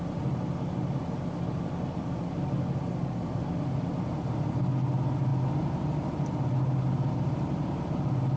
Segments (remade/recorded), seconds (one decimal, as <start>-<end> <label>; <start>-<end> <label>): 0.0-8.4 recorded